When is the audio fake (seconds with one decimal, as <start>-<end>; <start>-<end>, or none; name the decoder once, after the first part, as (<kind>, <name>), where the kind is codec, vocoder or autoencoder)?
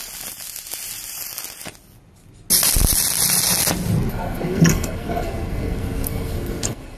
4.1-7.0 (codec, SNAC)